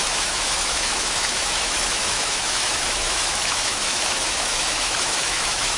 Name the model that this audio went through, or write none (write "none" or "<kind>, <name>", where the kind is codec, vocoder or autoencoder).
autoencoder, DAC-VAE